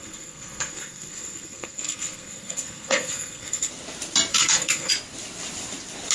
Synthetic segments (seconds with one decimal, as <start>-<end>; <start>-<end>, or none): 0.0-3.7; 4.3-4.9